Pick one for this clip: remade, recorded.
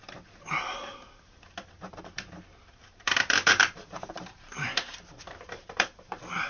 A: remade